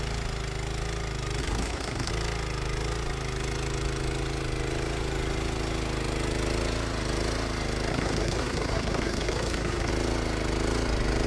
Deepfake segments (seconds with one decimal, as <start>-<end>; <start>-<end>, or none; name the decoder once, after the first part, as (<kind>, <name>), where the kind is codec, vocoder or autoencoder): 1.4-2.1 (codec, SNAC); 7.9-9.9